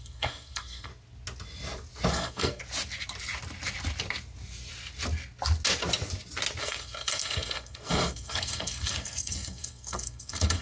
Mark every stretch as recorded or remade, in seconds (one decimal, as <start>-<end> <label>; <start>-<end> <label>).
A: 0.0-0.9 remade; 0.9-2.1 recorded; 2.1-2.6 remade; 2.6-6.6 recorded; 6.6-10.6 remade